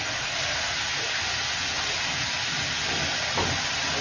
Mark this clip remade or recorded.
recorded